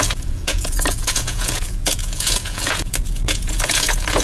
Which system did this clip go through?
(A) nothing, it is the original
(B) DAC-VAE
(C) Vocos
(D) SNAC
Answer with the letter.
C